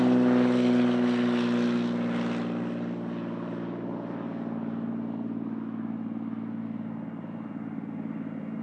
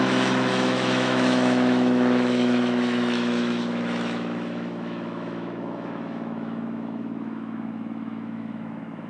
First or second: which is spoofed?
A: second